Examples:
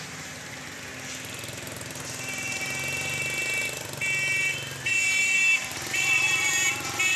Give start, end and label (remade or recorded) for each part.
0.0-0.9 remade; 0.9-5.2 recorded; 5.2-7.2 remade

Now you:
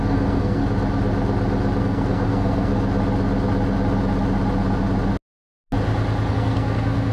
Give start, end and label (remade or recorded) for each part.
0.0-0.6 remade; 0.6-1.8 recorded; 1.8-2.7 remade; 2.7-6.3 recorded; 6.3-7.1 remade

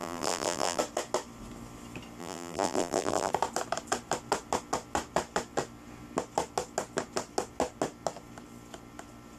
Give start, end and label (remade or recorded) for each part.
0.0-0.8 remade; 0.8-2.2 recorded; 2.2-3.3 remade; 3.3-9.4 recorded

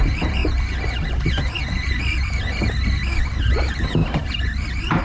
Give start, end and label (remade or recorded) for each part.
0.0-0.4 remade; 0.4-3.4 recorded; 3.4-5.0 remade

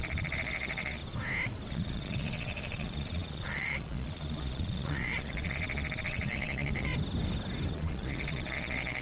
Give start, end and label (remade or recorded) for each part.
0.0-1.0 remade; 1.0-1.7 recorded; 1.7-6.9 remade; 6.9-7.7 recorded; 7.7-9.0 remade

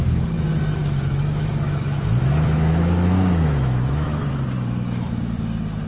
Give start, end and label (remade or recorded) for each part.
0.0-0.8 recorded; 0.8-4.3 remade; 4.3-5.9 recorded